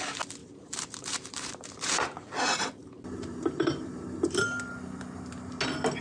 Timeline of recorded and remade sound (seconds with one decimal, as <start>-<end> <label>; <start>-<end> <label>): 0.0-0.4 recorded; 0.4-4.0 remade; 4.0-6.0 recorded